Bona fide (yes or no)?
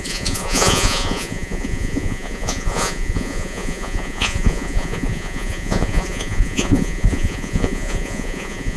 no